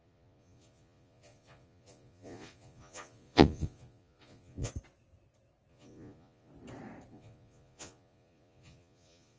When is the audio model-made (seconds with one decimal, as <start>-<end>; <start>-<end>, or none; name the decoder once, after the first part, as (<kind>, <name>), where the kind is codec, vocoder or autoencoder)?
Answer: 0.0-4.7 (vocoder, Vocos); 5.7-6.5; 7.1-9.4